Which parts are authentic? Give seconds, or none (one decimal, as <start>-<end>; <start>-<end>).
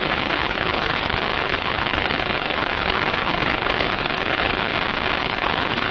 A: 4.7-5.2